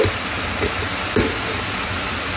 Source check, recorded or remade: recorded